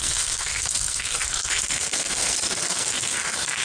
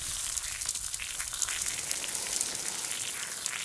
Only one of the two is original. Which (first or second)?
second